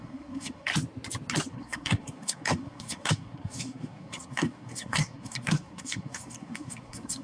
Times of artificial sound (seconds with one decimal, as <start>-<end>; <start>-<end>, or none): 0.0-0.7; 1.5-7.2